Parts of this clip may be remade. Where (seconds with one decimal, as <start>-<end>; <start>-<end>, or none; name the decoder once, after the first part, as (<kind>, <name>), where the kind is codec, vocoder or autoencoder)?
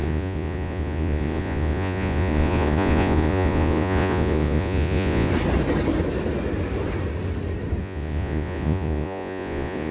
0.0-5.3 (vocoder, Vocos); 7.8-9.9